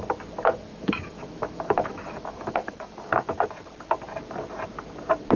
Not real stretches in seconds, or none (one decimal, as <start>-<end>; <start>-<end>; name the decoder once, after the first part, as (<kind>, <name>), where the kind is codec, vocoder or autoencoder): 0.7-3.3 (autoencoder, DAC-VAE)